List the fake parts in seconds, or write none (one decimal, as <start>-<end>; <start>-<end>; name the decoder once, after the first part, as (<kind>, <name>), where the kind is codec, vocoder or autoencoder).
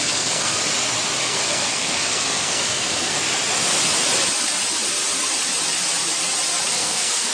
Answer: 0.0-0.6 (codec, SNAC); 1.2-3.2; 6.7-7.3